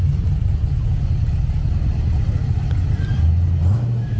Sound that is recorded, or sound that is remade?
recorded